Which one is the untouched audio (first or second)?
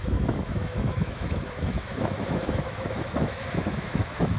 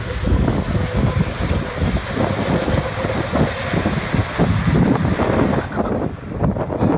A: second